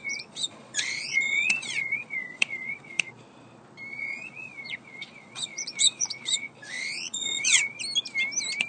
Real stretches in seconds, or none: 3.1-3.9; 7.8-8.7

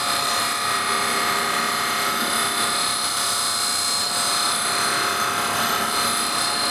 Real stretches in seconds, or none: none

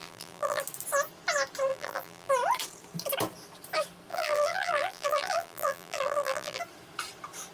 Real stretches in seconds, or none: 0.6-1.7; 2.3-4.1; 6.6-7.5

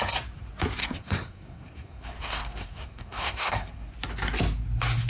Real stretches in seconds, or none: 0.0-0.8; 3.9-5.1

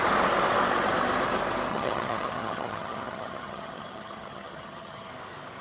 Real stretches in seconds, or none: 0.0-1.7; 5.1-5.6

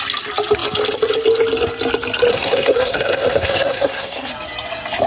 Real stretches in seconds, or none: 0.0-2.3; 4.3-5.1

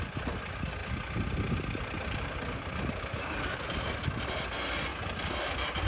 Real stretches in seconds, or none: 0.0-0.8; 4.3-4.9

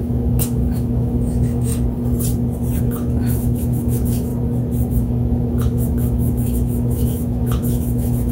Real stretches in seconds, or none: 1.7-2.8; 4.3-4.9